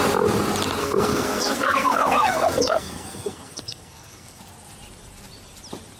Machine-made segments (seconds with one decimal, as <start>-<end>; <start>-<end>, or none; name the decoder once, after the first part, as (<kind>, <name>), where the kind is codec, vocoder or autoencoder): 0.8-4.4 (codec, SNAC)